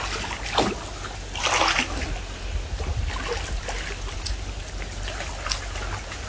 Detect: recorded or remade recorded